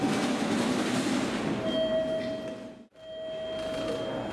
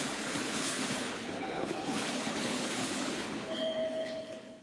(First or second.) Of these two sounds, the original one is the first